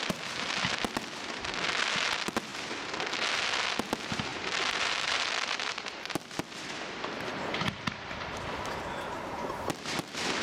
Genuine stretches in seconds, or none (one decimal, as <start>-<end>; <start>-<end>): 0.0-4.3; 8.8-10.4